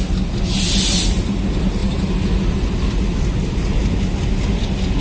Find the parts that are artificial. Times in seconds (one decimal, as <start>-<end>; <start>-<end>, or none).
none